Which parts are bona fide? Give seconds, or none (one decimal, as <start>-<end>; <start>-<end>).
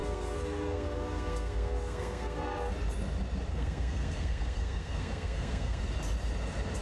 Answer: 2.7-3.5; 5.8-6.8